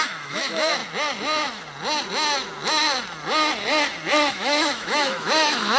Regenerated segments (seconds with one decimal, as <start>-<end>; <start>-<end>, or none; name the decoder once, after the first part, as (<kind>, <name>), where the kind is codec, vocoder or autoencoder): 0.0-0.8 (autoencoder, DAC-VAE); 4.3-5.8